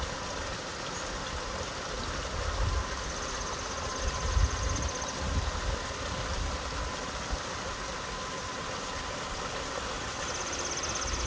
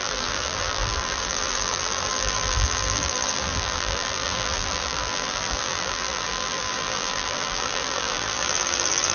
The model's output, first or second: second